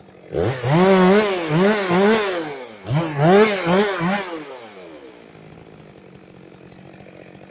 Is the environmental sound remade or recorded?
recorded